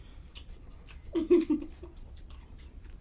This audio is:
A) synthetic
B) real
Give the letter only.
A